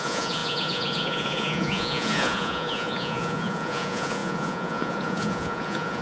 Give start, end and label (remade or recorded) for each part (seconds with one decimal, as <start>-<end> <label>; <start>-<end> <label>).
0.0-6.0 remade